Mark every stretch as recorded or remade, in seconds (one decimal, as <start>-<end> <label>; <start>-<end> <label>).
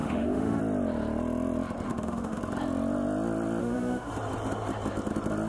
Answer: 0.0-0.6 remade; 0.6-1.9 recorded; 1.9-2.4 remade; 2.4-3.6 recorded; 3.6-4.1 remade; 4.1-5.5 recorded